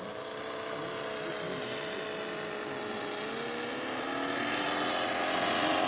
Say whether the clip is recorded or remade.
recorded